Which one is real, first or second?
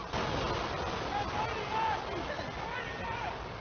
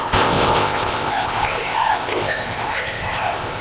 first